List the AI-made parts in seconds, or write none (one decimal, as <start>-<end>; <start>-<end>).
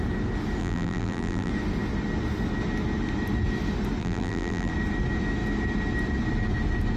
0.6-1.5; 4.0-4.7